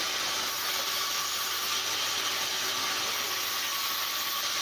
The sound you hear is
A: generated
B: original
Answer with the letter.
B